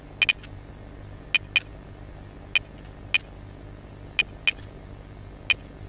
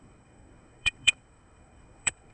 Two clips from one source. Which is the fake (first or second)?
second